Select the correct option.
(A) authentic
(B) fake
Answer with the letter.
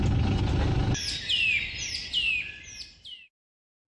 A